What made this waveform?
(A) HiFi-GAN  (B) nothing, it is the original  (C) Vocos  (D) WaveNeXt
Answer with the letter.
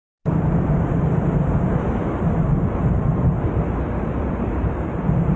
B